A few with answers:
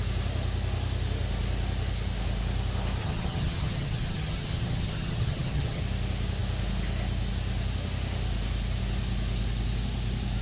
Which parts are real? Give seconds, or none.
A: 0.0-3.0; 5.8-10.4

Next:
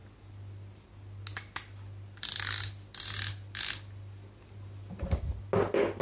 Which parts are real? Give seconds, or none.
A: 0.0-6.0